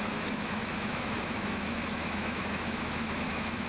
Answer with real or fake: fake